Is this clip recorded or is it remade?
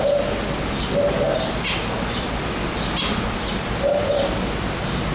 recorded